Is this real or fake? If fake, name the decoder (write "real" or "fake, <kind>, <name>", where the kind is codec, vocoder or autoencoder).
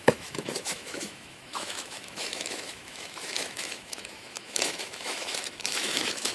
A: fake, autoencoder, DAC-VAE